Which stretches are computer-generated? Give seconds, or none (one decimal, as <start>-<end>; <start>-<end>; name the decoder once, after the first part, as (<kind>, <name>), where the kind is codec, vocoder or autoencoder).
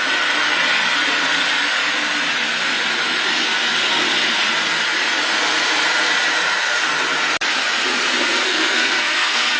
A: 8.4-9.6 (codec, SNAC)